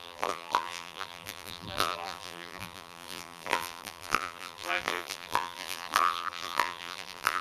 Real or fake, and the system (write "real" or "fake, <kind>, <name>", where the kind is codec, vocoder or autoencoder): fake, vocoder, BigVGAN v2